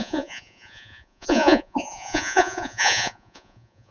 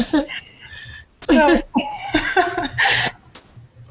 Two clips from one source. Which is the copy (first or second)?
first